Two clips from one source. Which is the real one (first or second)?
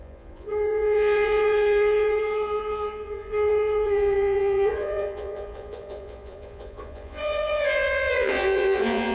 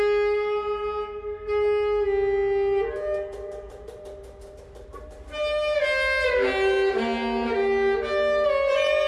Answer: second